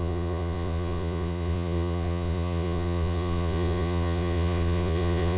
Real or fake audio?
fake